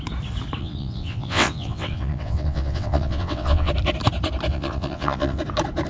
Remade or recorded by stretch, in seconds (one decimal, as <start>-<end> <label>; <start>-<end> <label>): 0.0-0.6 recorded; 0.6-3.7 remade; 3.7-4.5 recorded; 4.5-5.4 remade; 5.4-5.9 recorded